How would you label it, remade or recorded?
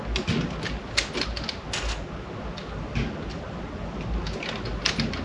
recorded